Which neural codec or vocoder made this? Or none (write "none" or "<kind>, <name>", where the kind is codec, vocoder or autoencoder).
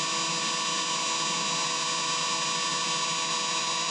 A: none